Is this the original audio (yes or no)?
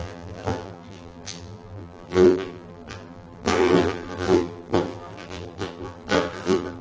no